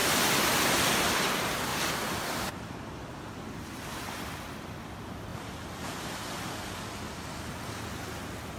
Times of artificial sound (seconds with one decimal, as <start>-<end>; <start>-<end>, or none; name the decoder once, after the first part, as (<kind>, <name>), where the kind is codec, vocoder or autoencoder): 1.7-2.8 (vocoder, BigVGAN v2)